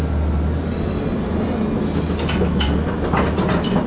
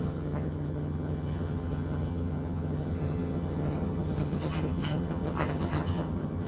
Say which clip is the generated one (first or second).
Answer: second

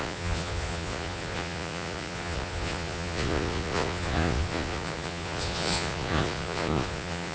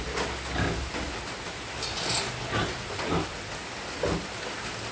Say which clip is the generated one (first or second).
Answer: first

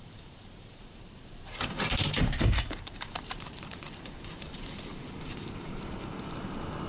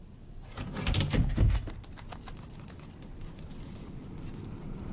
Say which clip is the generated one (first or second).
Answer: first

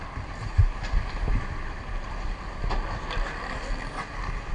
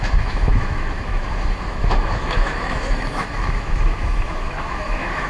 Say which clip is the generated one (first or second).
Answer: second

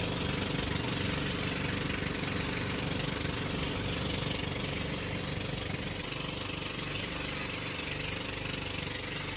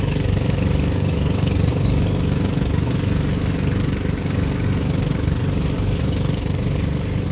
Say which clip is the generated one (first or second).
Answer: second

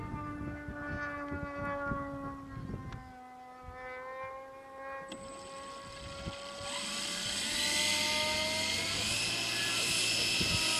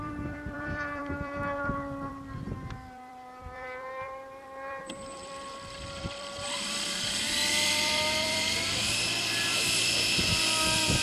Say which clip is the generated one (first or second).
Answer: second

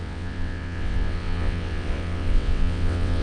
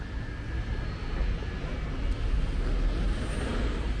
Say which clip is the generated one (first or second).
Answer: first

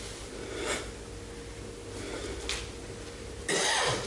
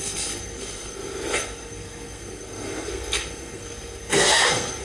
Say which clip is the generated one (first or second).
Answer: second